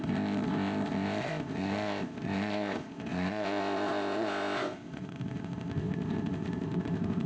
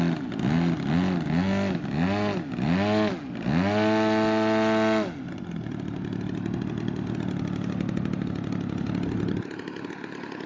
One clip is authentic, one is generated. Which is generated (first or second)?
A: first